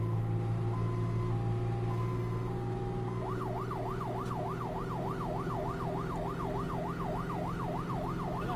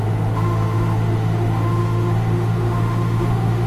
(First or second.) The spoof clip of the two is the second